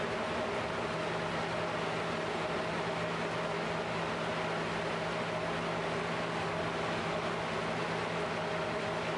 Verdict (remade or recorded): recorded